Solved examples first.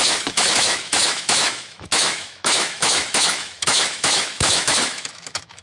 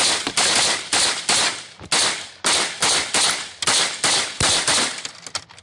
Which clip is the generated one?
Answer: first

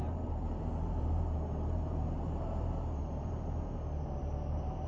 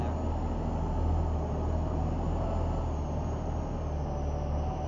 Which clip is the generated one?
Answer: first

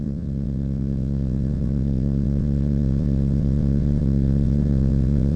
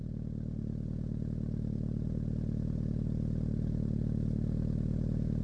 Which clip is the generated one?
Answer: first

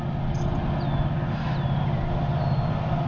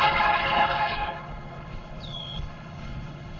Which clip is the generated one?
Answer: second